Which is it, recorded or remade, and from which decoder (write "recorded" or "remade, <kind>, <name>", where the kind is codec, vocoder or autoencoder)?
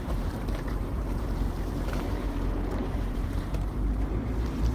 remade, vocoder, BigVGAN v2